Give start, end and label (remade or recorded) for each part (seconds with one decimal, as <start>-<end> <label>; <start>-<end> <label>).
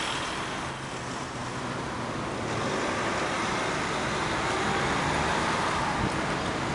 0.0-6.7 recorded